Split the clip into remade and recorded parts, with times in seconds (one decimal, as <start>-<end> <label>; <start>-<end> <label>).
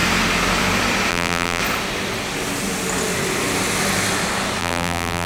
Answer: 0.0-1.1 recorded; 1.1-1.6 remade; 1.6-4.6 recorded; 4.6-5.3 remade